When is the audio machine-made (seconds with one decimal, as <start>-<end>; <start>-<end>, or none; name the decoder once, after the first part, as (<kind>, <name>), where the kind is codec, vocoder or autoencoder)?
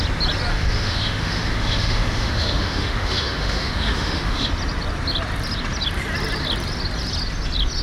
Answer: 0.5-4.5 (autoencoder, DAC-VAE)